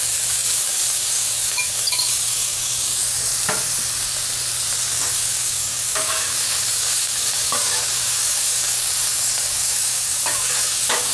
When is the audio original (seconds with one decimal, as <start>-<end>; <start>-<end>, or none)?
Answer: 3.3-4.9

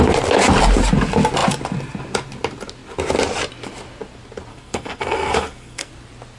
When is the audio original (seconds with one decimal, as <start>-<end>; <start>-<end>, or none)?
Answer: 0.0-4.5; 5.9-6.4